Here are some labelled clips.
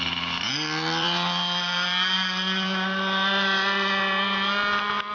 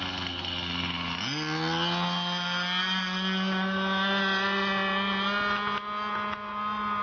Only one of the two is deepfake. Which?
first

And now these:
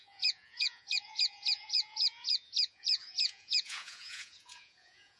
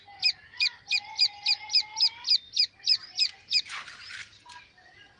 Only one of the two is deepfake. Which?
first